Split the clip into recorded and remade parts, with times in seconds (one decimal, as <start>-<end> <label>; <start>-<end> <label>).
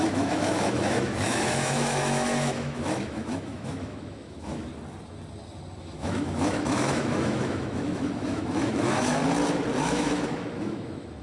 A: 0.0-4.7 remade; 4.7-5.8 recorded; 5.8-9.2 remade; 9.2-9.8 recorded; 9.8-11.2 remade